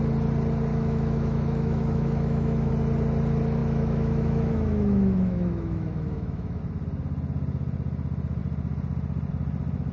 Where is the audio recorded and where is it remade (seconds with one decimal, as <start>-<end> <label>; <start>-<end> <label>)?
0.0-0.7 recorded; 0.7-2.7 remade; 2.7-3.6 recorded; 3.6-6.6 remade; 6.6-9.9 recorded